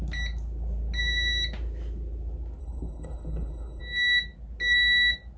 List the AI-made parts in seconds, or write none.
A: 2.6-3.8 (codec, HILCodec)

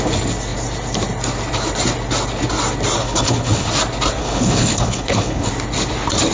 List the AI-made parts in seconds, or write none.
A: 3.0-3.7 (codec, HILCodec); 4.2-5.5

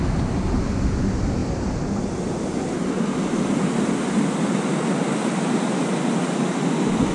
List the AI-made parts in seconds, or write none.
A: none

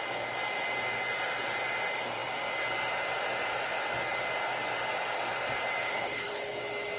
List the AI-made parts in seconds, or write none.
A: 5.8-6.6 (codec, HILCodec)

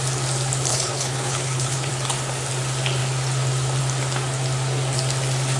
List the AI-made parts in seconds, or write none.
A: 0.7-1.9 (codec, HILCodec)